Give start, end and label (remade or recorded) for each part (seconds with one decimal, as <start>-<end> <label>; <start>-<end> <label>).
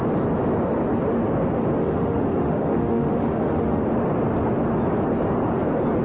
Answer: 0.0-1.8 recorded; 1.8-3.8 remade; 3.8-6.0 recorded